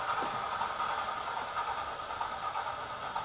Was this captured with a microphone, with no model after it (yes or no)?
yes